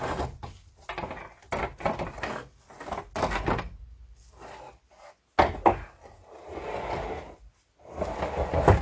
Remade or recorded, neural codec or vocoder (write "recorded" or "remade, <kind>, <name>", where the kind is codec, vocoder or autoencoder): recorded